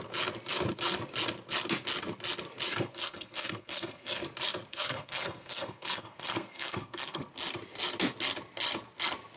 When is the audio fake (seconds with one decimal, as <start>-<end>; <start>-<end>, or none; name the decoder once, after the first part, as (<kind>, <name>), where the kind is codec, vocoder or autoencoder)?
2.7-4.2 (codec, SNAC); 4.7-7.2